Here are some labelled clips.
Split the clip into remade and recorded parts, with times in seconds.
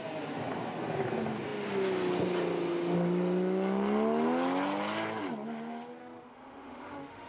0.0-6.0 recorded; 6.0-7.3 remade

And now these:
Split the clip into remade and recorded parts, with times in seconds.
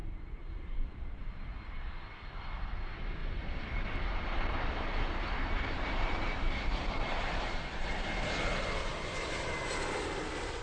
0.0-1.2 remade; 1.2-3.2 recorded; 3.2-7.9 remade; 7.9-10.6 recorded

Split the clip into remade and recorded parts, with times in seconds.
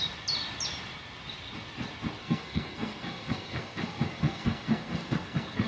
0.0-2.2 recorded; 2.2-5.7 remade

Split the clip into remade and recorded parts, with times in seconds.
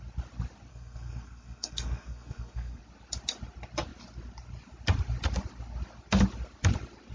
0.0-0.7 recorded; 0.7-2.8 remade; 2.8-7.1 recorded